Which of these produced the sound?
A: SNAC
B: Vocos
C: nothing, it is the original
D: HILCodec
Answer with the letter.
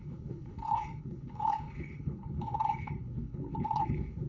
D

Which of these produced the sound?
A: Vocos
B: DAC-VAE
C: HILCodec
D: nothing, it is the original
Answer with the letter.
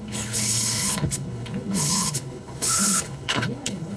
C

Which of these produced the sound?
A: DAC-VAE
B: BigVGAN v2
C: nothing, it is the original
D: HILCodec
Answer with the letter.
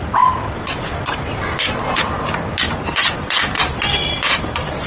C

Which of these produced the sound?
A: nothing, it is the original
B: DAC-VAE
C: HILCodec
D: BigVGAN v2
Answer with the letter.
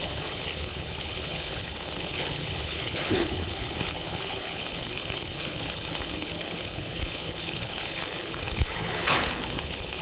C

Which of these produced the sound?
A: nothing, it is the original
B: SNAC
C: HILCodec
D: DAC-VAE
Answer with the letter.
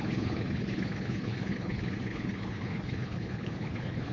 C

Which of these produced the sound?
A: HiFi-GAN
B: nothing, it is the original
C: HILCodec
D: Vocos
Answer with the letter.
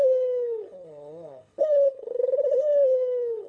C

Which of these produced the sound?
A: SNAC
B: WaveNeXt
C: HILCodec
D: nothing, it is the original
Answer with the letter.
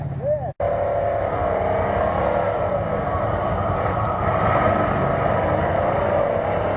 D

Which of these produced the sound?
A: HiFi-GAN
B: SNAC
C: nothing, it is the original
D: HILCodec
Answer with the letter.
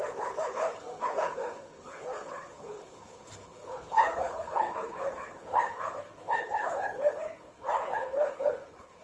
D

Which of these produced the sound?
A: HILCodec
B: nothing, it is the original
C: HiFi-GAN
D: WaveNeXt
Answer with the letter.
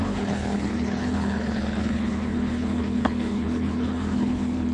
A